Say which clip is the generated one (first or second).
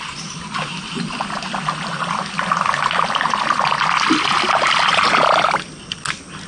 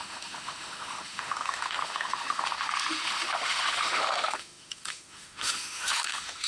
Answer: second